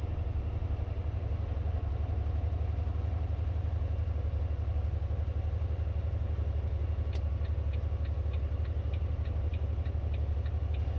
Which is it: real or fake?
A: real